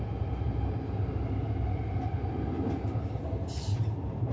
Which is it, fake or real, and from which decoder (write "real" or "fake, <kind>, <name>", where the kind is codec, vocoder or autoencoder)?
real